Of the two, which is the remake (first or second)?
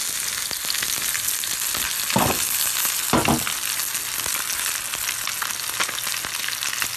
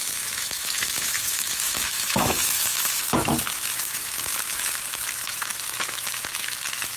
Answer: second